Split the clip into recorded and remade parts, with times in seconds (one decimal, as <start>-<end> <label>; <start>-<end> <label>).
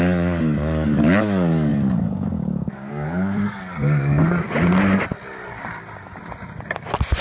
0.0-4.2 remade; 4.2-7.2 recorded